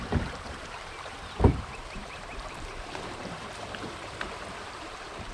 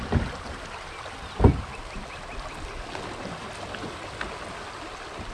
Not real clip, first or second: first